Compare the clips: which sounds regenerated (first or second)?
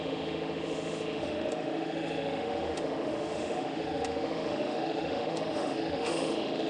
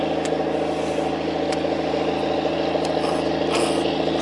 first